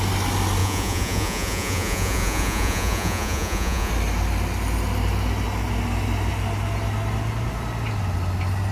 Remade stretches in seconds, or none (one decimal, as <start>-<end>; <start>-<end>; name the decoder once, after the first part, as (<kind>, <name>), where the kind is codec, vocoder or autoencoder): 0.6-3.9 (vocoder, Vocos)